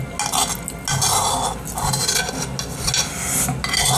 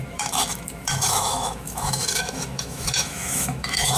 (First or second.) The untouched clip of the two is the first